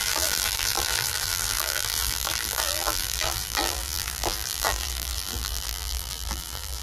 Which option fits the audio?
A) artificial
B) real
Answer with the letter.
A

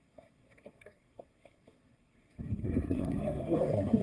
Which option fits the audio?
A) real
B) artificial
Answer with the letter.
B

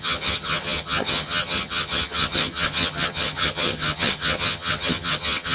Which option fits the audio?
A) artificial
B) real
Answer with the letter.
A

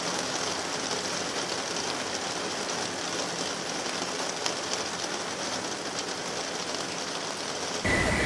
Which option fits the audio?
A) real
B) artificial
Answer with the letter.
A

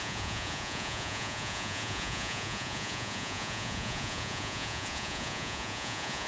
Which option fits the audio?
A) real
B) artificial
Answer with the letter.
B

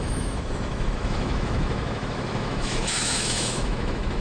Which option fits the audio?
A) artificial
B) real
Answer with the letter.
A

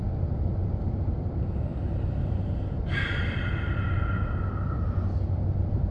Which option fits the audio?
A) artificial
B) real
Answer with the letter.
B